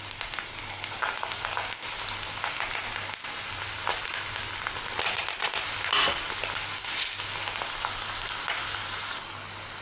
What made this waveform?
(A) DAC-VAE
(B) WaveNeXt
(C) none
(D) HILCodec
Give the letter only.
C